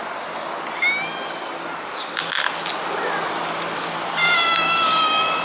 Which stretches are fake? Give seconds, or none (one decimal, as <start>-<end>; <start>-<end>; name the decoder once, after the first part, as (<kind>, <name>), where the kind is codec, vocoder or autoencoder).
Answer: 4.2-5.4 (codec, DAC)